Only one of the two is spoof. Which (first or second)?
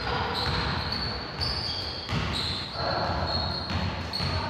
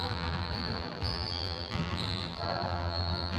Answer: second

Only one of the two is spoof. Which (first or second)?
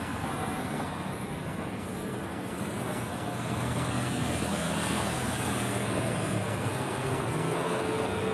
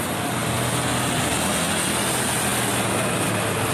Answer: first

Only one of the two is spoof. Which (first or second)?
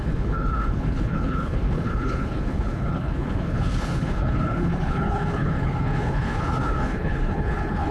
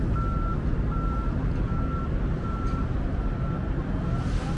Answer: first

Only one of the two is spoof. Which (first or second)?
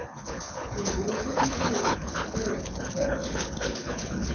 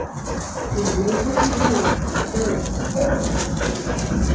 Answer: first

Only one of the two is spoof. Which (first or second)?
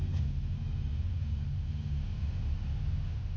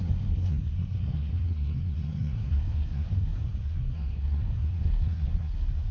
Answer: second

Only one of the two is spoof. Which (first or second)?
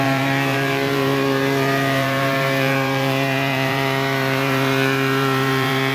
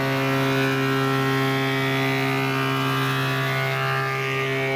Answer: first